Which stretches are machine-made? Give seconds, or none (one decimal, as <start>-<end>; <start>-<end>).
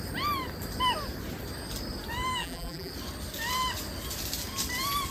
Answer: 2.4-2.9